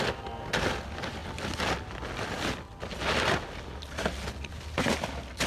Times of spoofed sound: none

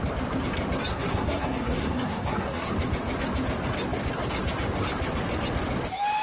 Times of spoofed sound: 0.9-2.7

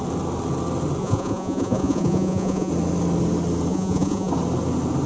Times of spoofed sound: 1.0-2.7; 3.7-4.3